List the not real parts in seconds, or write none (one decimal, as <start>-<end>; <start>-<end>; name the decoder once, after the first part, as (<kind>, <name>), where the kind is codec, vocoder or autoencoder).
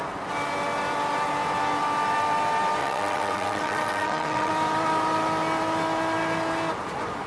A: 2.8-4.5 (vocoder, WaveNeXt)